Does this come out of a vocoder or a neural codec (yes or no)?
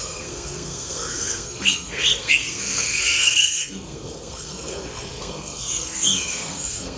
yes